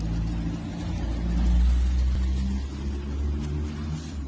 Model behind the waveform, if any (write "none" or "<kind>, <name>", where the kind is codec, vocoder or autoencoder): none